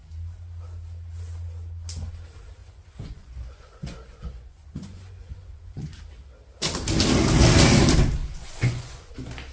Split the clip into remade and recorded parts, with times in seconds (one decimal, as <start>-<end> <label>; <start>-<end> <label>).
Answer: 0.0-2.6 recorded; 2.6-6.0 remade; 6.0-8.2 recorded; 8.2-9.1 remade; 9.1-9.5 recorded